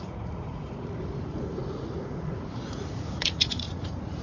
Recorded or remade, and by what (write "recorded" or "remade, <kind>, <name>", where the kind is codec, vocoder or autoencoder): remade, vocoder, Vocos